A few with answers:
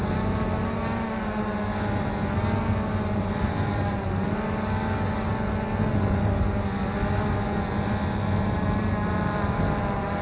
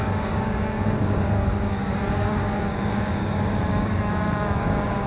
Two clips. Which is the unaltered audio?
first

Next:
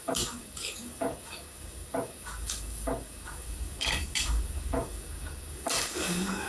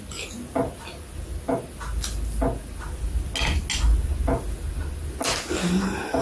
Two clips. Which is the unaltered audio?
second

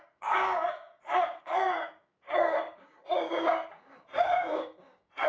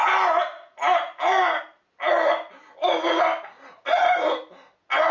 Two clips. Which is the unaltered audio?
second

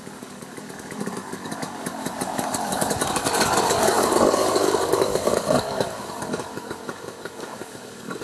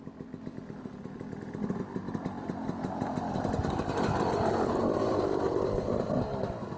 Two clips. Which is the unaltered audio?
second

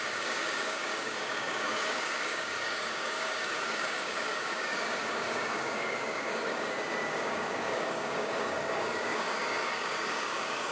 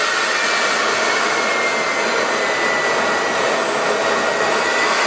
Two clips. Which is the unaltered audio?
second